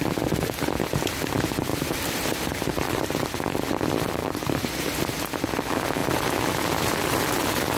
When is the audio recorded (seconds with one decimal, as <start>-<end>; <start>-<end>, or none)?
0.0-1.7; 2.6-4.2; 5.1-7.8